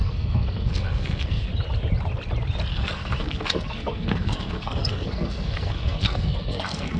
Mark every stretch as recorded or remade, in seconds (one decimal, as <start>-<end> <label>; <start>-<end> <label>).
0.0-1.5 remade; 1.5-2.7 recorded; 2.7-7.0 remade